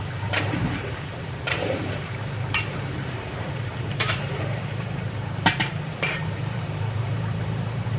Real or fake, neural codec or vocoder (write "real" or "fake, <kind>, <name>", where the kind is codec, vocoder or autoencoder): fake, vocoder, BigVGAN v2